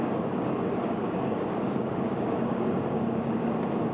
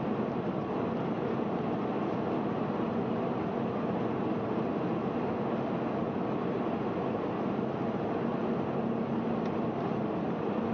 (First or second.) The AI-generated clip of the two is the first